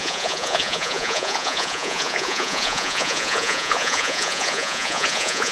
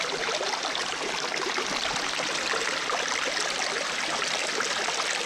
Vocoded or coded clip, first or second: first